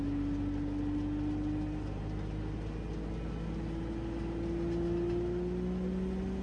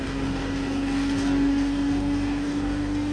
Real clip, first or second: first